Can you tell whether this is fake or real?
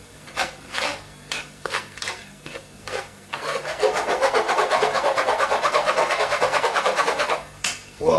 fake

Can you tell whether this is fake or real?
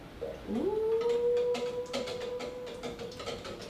real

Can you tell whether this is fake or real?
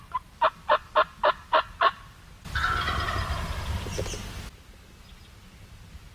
real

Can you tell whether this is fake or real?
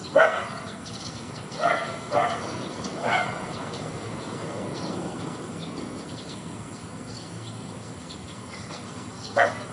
fake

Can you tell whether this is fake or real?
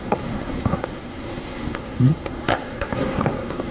fake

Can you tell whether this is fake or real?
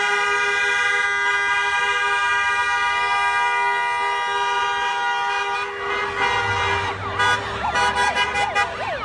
real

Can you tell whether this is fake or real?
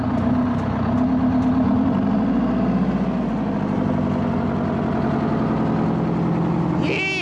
real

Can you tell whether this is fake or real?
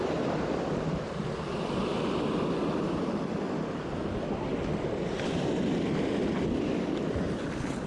real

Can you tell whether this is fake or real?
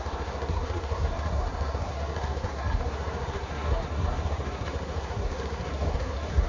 fake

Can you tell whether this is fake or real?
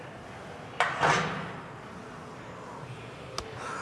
real